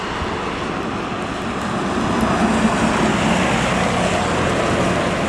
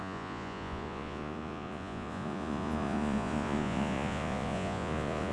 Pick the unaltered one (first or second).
first